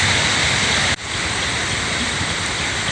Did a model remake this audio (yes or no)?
no